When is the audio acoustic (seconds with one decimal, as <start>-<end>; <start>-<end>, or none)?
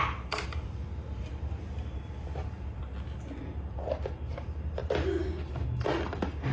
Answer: 2.8-3.4; 4.8-5.4